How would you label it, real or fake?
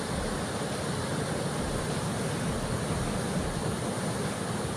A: real